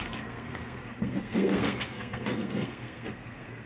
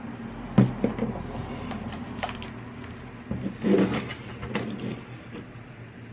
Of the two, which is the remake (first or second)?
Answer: first